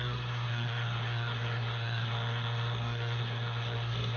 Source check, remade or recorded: remade